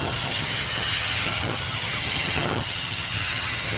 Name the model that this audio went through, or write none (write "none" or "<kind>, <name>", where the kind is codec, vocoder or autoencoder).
vocoder, HiFi-GAN